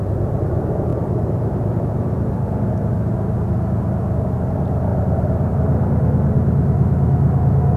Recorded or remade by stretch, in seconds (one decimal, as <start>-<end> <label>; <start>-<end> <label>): 0.0-0.9 recorded; 0.9-2.5 remade; 2.5-4.9 recorded; 4.9-5.5 remade; 5.5-7.8 recorded